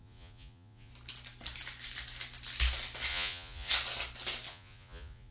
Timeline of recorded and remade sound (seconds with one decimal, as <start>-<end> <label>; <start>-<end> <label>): 0.0-0.9 remade; 0.9-3.1 recorded; 3.1-3.7 remade; 3.7-4.5 recorded; 4.5-5.3 remade